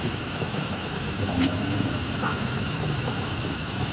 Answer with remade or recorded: remade